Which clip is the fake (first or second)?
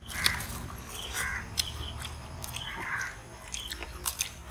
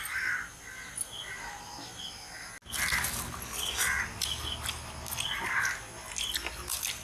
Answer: first